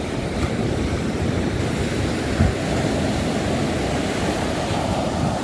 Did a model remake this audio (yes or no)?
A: yes